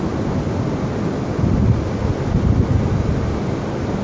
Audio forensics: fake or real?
real